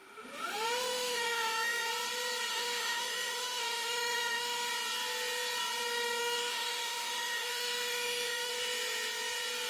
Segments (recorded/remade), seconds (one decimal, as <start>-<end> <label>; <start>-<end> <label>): 0.0-1.9 remade; 1.9-2.5 recorded; 2.5-4.7 remade; 4.7-6.2 recorded; 6.2-8.5 remade; 8.5-9.7 recorded